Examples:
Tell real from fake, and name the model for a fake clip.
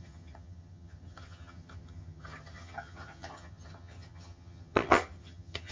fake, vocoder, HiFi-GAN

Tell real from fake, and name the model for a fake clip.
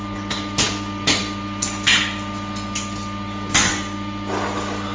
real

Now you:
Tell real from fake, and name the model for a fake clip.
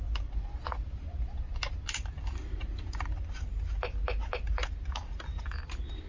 real